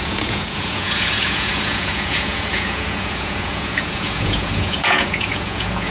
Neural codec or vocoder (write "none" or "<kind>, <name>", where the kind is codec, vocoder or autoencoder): vocoder, Vocos